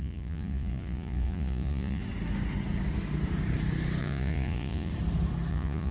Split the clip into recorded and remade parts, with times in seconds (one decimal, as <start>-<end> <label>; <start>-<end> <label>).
0.0-2.0 remade; 2.0-4.0 recorded; 4.0-4.9 remade; 4.9-5.5 recorded; 5.5-5.9 remade